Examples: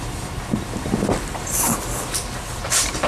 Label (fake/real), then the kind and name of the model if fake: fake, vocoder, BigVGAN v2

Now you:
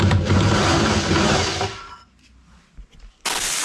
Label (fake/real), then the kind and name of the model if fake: real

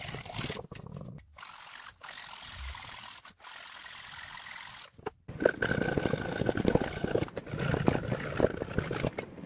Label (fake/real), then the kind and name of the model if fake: fake, vocoder, BigVGAN v2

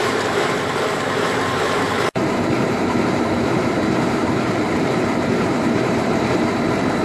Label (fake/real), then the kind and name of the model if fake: fake, vocoder, BigVGAN v2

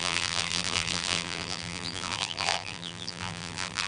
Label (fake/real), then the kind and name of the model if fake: fake, vocoder, BigVGAN v2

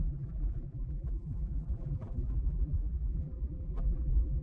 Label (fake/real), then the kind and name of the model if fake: fake, vocoder, BigVGAN v2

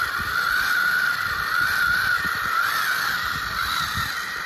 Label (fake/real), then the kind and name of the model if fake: fake, vocoder, BigVGAN v2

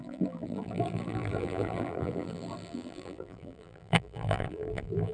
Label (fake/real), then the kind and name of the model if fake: fake, vocoder, BigVGAN v2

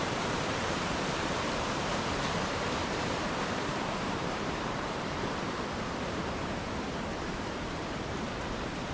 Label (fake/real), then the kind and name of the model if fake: fake, vocoder, BigVGAN v2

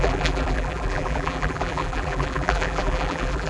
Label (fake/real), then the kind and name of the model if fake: fake, vocoder, BigVGAN v2